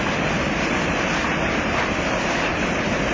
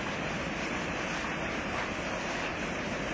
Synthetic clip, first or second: first